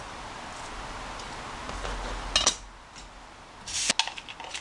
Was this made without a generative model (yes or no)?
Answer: yes